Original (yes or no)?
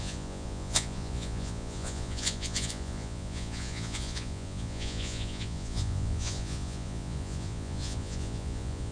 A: no